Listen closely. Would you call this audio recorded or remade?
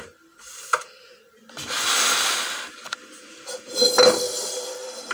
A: recorded